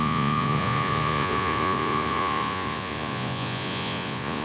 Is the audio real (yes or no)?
no